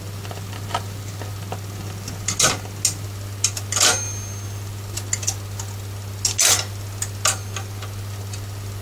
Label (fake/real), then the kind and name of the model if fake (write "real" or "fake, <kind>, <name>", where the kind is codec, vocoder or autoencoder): real